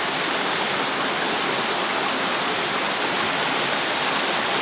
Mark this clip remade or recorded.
recorded